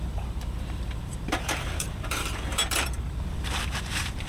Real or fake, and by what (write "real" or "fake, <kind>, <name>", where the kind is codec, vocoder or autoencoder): fake, vocoder, BigVGAN v2